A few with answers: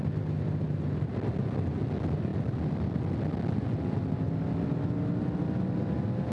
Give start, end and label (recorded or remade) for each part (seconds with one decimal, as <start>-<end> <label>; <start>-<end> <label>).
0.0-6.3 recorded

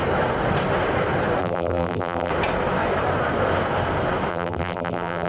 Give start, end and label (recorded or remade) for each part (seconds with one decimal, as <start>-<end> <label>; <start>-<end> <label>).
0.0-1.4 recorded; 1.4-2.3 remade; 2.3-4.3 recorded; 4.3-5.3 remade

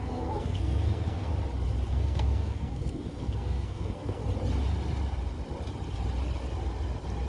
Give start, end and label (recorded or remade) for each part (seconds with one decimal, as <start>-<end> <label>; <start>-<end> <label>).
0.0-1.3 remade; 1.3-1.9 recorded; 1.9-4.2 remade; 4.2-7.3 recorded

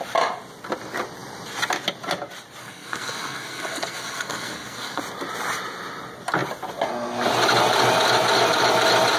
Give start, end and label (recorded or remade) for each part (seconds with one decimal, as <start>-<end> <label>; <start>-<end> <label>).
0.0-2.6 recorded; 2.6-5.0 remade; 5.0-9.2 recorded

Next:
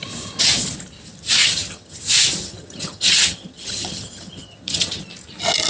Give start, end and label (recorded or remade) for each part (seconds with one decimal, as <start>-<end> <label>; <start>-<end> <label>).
0.0-1.4 recorded; 1.4-2.0 remade; 2.0-2.4 recorded; 2.4-5.0 remade; 5.0-5.7 recorded

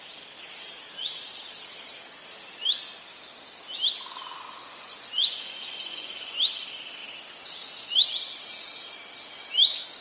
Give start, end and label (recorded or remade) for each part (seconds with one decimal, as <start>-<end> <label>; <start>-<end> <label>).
0.0-4.6 recorded; 4.6-6.4 remade; 6.4-10.0 recorded

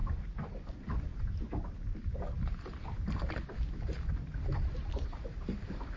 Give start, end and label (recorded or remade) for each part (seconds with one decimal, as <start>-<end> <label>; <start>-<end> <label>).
0.0-6.0 recorded